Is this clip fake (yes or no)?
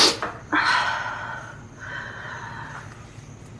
no